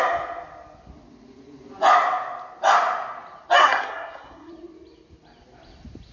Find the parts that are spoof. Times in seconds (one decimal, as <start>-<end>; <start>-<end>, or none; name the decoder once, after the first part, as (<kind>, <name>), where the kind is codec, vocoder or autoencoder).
3.6-4.5 (codec, SNAC)